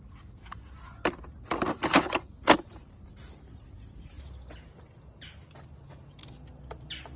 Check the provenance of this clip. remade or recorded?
recorded